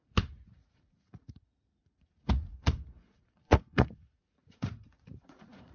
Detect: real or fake fake